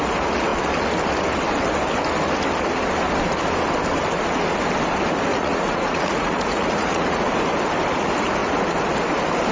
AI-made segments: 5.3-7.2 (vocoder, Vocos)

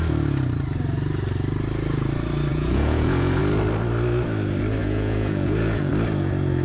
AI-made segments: 2.5-3.4 (vocoder, Vocos); 4.8-5.9